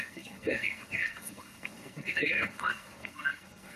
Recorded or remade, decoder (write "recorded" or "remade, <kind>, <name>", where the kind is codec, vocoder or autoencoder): remade, codec, SNAC